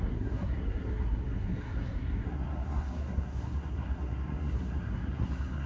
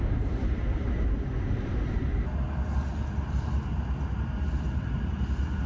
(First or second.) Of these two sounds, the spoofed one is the first